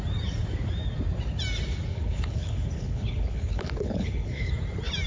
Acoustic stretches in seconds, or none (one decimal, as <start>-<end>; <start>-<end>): 0.0-1.9; 4.5-5.1